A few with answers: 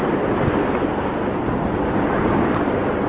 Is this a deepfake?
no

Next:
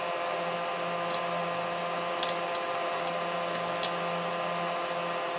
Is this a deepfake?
no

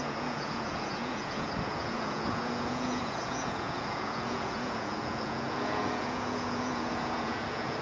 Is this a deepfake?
yes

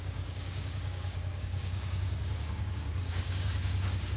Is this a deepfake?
yes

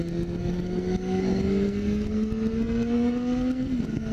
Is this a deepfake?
yes